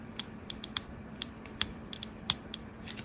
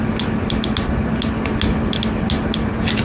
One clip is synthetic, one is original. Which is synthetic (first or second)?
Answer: first